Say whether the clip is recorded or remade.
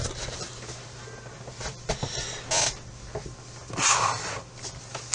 recorded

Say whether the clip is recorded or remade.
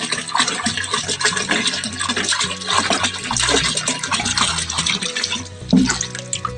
recorded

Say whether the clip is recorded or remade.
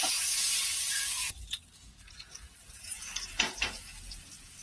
remade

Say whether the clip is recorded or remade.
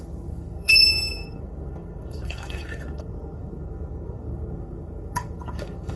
remade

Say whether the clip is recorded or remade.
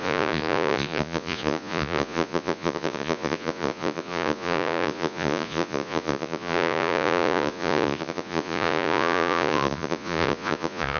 remade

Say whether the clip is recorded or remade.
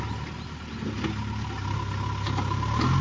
recorded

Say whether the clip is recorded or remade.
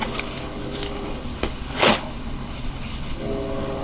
remade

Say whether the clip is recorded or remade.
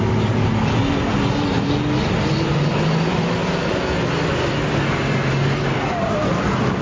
recorded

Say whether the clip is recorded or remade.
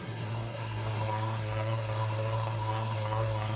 remade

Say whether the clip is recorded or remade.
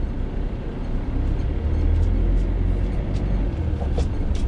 recorded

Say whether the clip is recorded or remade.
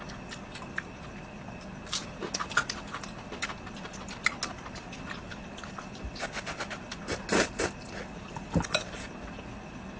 recorded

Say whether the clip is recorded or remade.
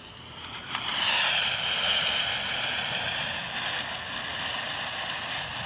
recorded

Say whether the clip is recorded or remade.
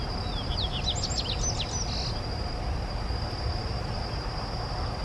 recorded